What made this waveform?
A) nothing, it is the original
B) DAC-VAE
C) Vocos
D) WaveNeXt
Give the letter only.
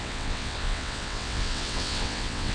D